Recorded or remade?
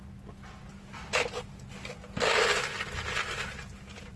recorded